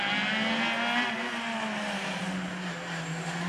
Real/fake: real